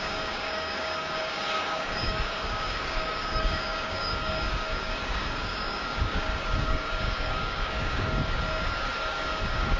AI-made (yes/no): yes